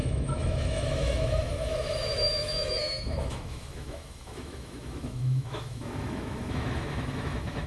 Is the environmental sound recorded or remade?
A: remade